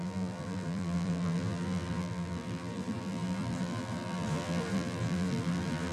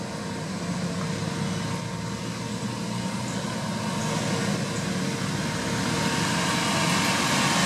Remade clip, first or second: first